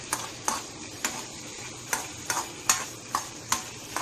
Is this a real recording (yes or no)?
yes